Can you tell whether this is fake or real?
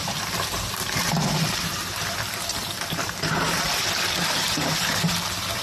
fake